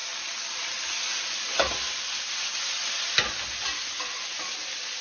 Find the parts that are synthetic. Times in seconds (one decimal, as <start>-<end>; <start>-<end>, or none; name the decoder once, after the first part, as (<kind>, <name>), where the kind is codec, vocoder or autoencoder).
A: none